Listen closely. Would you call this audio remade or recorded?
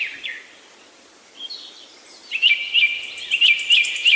recorded